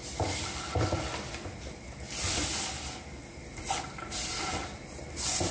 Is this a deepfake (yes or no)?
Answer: no